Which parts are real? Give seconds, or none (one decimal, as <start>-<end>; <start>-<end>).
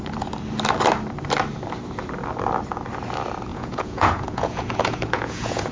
0.0-3.5